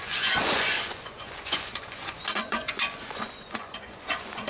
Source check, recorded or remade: remade